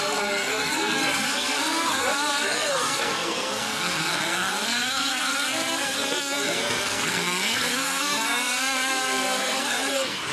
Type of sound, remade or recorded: remade